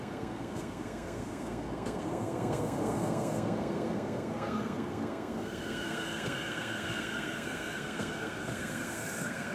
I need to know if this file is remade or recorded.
remade